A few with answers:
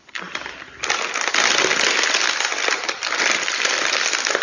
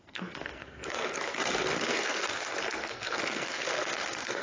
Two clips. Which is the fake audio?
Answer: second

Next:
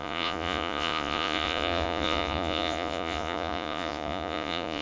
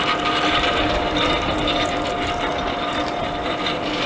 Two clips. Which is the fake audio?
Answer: first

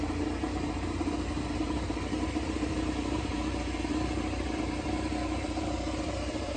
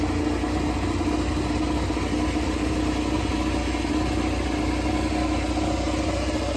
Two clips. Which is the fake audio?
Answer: first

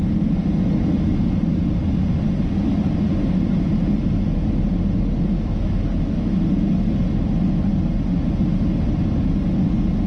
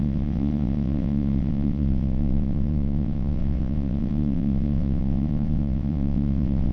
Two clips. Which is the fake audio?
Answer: second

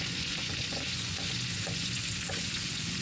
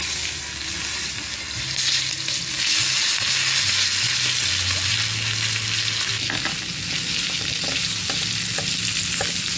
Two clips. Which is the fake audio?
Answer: first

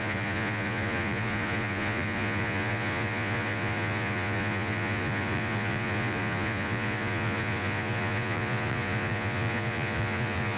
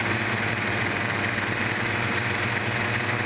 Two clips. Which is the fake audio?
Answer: first